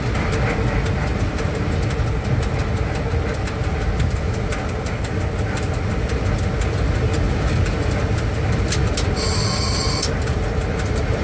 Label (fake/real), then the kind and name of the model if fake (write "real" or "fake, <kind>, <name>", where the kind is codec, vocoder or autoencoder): real